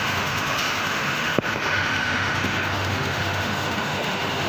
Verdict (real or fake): fake